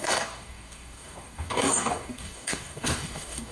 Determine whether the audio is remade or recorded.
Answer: remade